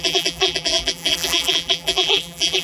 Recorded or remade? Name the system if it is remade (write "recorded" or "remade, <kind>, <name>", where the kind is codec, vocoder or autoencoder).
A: remade, vocoder, BigVGAN v2